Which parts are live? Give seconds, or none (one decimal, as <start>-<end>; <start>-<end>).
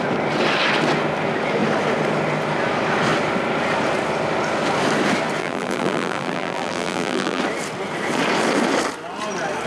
0.0-5.4; 7.4-9.7